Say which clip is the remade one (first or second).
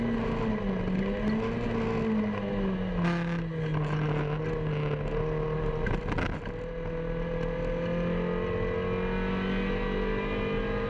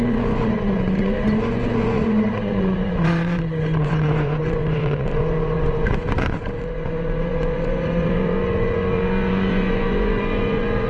second